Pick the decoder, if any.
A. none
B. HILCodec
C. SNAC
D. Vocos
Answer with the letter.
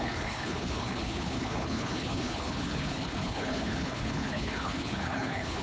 B